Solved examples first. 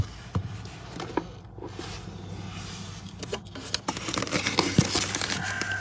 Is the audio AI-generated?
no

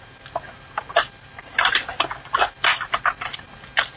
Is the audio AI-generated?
no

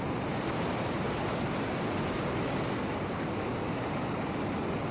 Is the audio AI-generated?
no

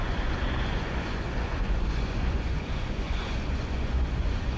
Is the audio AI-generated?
yes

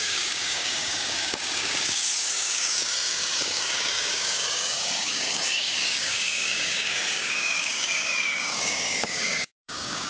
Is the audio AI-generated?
yes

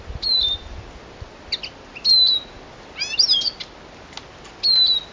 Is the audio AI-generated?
no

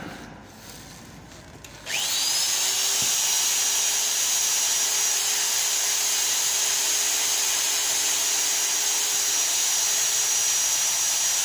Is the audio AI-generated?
no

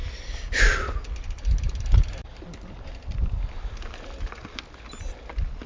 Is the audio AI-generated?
no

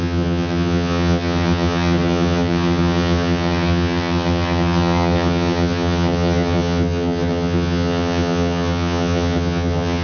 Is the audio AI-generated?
yes